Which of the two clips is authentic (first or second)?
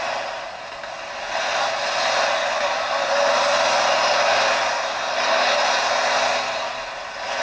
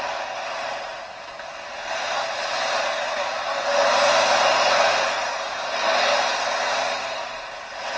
first